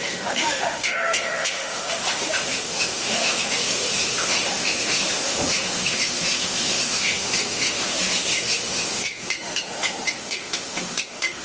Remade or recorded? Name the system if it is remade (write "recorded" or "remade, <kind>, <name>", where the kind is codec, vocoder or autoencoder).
remade, autoencoder, DAC-VAE